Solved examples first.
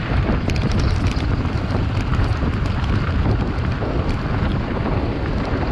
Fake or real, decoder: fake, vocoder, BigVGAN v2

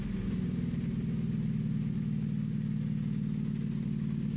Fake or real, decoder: real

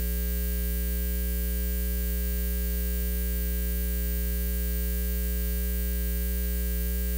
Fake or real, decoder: real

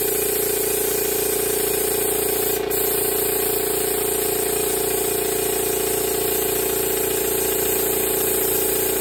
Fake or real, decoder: real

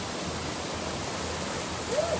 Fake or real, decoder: real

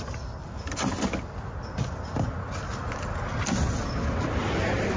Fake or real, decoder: real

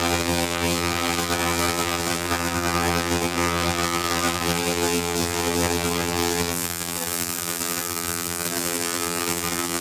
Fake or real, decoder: fake, vocoder, BigVGAN v2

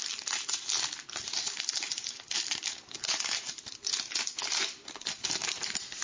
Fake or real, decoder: fake, vocoder, BigVGAN v2